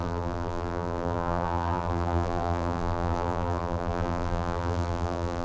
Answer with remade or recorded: remade